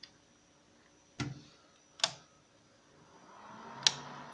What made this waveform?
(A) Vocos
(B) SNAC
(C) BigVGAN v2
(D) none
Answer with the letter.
D